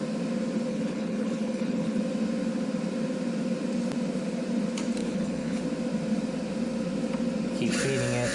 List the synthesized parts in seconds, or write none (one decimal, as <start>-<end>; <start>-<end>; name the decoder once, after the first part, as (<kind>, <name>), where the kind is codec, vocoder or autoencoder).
0.7-2.0 (codec, HILCodec); 5.0-5.6